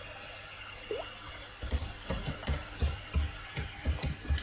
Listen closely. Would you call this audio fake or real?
real